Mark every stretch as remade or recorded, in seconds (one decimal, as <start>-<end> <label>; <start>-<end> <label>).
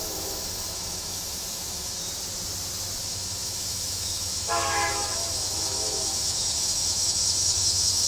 0.0-2.0 remade; 2.0-3.0 recorded; 3.0-8.1 remade